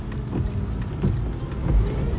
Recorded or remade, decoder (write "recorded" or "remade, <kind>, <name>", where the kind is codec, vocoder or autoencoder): recorded